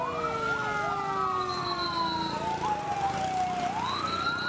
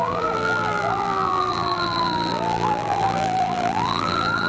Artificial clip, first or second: second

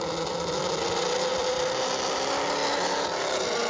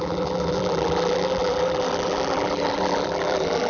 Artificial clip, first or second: second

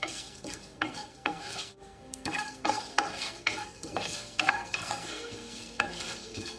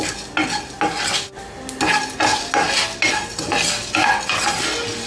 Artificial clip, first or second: first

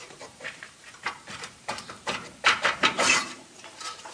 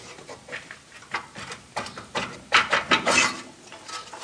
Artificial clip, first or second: first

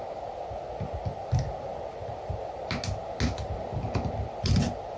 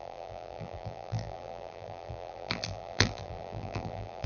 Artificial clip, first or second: second